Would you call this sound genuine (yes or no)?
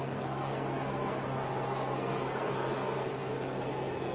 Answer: no